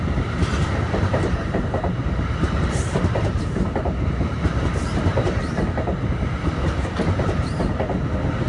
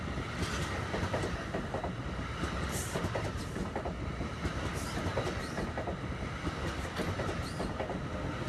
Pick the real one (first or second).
second